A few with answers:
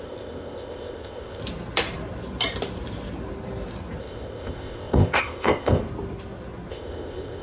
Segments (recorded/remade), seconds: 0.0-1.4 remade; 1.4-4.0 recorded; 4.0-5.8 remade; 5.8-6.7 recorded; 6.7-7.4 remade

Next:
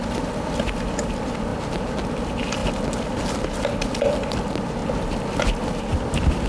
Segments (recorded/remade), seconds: 0.0-1.5 remade; 1.5-2.1 recorded; 2.1-4.8 remade; 4.8-5.7 recorded; 5.7-6.5 remade